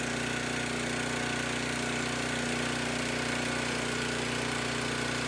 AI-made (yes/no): no